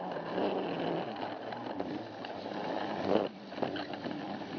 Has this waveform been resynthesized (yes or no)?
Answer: no